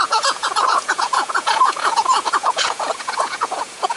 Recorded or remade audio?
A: remade